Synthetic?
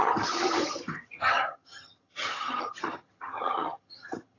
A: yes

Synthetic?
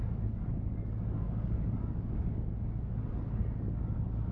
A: yes